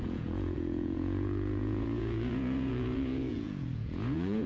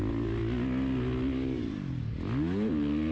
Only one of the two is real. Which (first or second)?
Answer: second